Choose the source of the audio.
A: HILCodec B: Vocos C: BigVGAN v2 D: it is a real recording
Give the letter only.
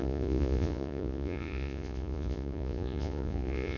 B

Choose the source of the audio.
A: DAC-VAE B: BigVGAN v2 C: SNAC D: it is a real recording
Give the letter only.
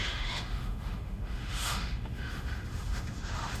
A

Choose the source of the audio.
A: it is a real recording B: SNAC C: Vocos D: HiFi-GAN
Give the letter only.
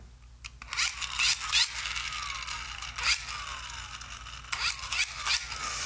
A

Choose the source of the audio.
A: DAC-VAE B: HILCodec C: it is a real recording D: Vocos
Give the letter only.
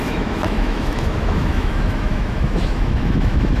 A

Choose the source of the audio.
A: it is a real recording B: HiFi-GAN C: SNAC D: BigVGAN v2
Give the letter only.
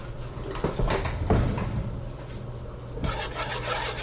A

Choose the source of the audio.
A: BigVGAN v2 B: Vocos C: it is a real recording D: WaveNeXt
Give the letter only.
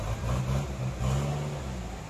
C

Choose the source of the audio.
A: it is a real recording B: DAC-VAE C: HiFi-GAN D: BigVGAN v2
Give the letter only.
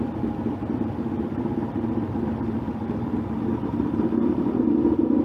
A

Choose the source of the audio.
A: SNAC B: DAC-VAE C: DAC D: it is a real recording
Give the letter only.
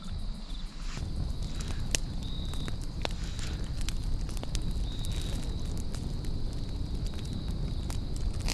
D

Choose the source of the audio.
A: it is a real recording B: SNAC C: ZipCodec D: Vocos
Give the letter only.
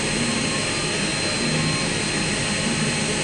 A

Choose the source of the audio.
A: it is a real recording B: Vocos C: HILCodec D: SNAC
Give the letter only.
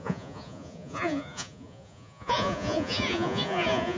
B